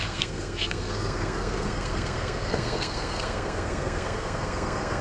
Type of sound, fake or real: fake